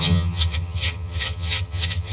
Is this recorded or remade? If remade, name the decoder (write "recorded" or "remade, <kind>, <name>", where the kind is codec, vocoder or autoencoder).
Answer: remade, vocoder, HiFi-GAN